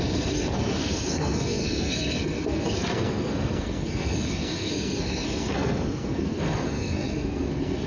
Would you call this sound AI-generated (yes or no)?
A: yes